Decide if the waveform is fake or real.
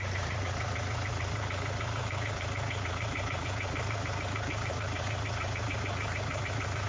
fake